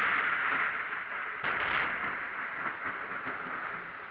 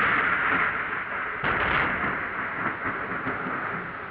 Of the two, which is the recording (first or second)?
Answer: second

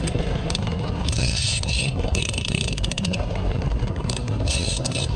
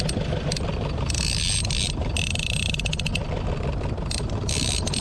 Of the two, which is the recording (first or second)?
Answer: second